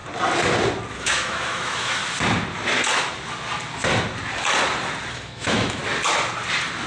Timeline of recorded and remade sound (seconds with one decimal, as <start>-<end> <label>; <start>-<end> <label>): 0.0-0.9 recorded; 0.9-2.0 remade; 2.0-5.1 recorded; 5.1-5.8 remade; 5.8-6.9 recorded